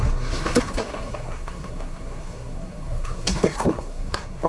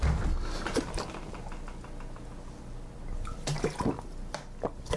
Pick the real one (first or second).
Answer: second